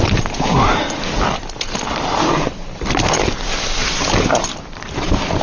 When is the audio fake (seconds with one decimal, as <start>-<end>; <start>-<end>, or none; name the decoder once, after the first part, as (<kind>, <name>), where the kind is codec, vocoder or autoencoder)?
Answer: none